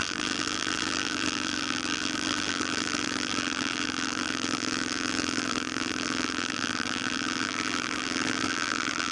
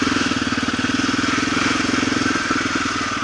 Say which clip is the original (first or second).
second